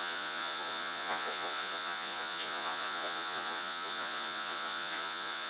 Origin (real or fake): fake